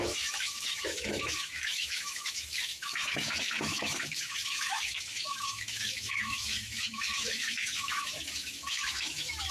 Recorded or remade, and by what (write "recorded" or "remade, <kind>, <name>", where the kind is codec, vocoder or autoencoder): remade, autoencoder, DAC-VAE